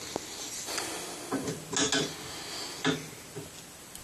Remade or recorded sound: recorded